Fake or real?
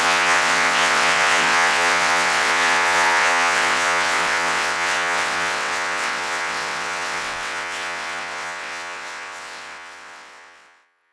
fake